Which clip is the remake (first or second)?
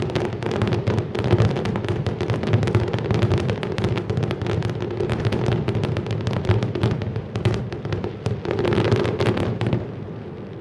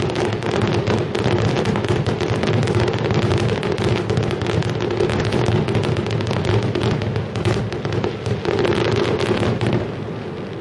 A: first